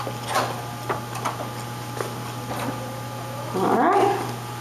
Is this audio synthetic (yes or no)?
no